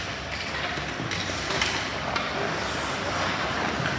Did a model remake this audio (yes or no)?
no